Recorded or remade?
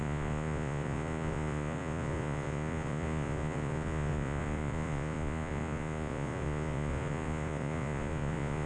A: remade